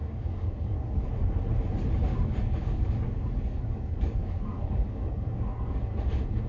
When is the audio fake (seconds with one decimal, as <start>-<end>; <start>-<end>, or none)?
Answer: 0.0-1.1; 2.1-5.9